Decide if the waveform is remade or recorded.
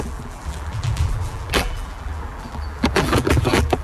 remade